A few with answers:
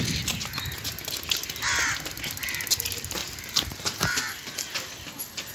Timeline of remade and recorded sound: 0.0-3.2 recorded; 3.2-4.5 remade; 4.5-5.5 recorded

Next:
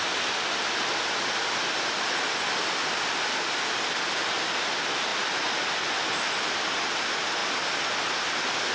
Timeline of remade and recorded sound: 0.0-8.7 recorded

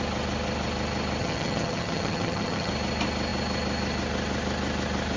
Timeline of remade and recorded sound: 0.0-1.2 recorded; 1.2-2.7 remade; 2.7-5.2 recorded